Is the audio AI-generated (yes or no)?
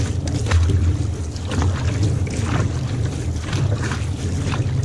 no